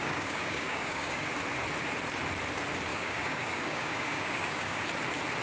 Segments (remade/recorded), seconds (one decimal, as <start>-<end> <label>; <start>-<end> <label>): 0.0-1.3 remade; 1.3-2.9 recorded; 2.9-4.8 remade; 4.8-5.4 recorded